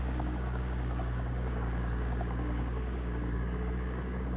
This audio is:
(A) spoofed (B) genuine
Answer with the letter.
A